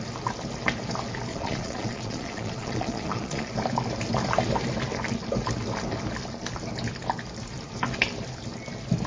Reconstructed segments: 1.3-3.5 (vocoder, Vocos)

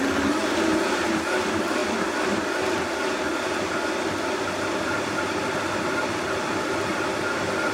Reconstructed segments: none

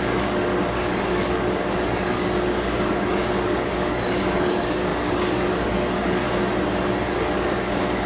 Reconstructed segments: 0.0-6.2 (codec, DAC); 7.2-8.1

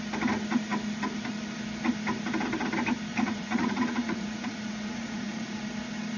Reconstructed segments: 3.1-5.6 (vocoder, Vocos)

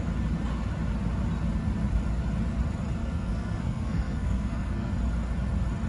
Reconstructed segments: 3.0-4.9 (codec, SNAC)

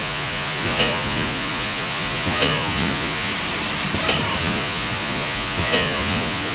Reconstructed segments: 0.0-3.3 (vocoder, Vocos); 4.4-6.5